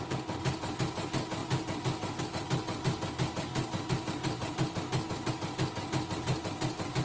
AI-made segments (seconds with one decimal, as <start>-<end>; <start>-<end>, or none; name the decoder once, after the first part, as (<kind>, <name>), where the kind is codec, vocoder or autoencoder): none